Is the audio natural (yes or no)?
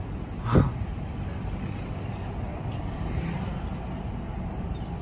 yes